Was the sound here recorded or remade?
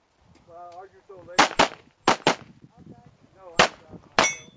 recorded